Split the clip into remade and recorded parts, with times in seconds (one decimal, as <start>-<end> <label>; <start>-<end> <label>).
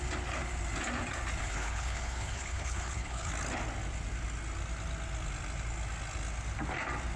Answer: 0.0-1.4 recorded; 1.4-3.3 remade; 3.3-7.2 recorded